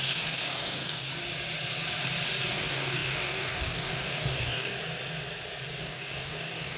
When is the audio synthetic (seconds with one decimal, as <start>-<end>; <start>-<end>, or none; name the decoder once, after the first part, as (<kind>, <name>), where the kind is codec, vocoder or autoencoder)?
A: 0.0-1.1 (codec, DAC); 2.5-4.7; 5.8-6.8